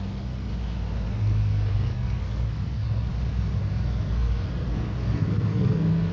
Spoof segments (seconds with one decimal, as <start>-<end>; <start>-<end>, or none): 0.0-0.5; 1.1-3.1; 3.6-6.1